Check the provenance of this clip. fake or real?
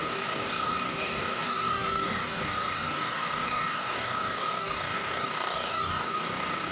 fake